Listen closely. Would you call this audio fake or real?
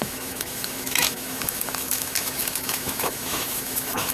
fake